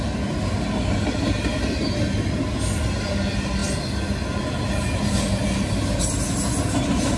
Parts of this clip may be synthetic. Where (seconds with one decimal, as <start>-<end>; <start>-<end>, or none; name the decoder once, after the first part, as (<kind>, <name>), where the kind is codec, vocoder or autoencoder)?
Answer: none